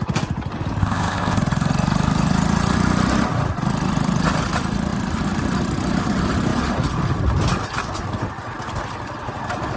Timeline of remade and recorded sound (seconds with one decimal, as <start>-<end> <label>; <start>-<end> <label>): 0.0-0.8 recorded; 0.8-1.4 remade; 1.4-9.8 recorded